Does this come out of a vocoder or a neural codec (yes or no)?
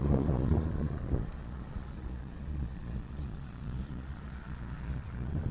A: yes